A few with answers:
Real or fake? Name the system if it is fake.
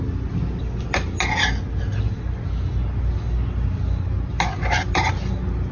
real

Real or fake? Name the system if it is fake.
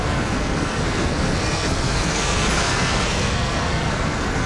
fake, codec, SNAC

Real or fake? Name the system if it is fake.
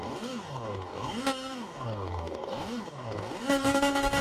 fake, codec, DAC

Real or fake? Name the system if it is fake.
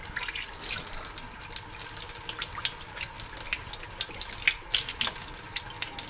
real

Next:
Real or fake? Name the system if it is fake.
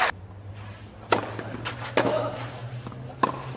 real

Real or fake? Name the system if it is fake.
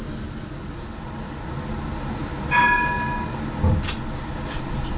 real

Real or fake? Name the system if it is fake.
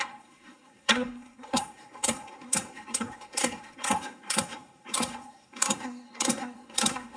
fake, codec, SNAC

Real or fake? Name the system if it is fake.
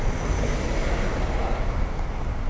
real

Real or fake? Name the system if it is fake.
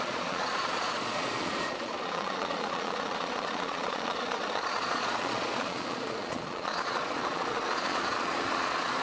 fake, vocoder, Vocos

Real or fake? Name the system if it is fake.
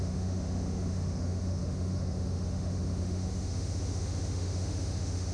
fake, autoencoder, DAC-VAE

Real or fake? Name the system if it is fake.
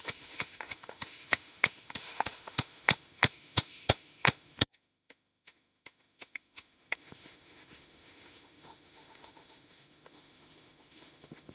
fake, autoencoder, DAC-VAE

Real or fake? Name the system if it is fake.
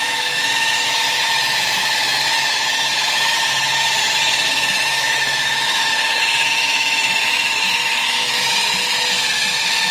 fake, autoencoder, DAC-VAE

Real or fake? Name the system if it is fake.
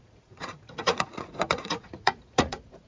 fake, vocoder, Vocos